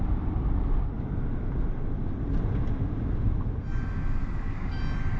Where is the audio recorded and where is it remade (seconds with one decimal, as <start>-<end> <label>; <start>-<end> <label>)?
0.0-4.2 recorded; 4.2-4.8 remade; 4.8-5.2 recorded